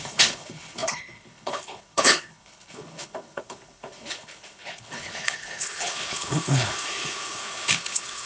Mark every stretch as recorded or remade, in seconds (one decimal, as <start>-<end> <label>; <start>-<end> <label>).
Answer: 0.0-8.3 remade